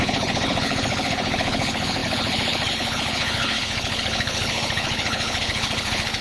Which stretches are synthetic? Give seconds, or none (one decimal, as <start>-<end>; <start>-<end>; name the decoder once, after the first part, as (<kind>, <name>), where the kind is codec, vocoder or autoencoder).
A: 0.0-6.2 (codec, HILCodec)